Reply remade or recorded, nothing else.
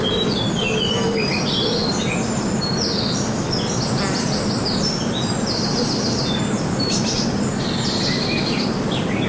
recorded